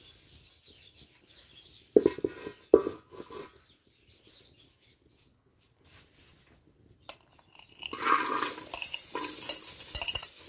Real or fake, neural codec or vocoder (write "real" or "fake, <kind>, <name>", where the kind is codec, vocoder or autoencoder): real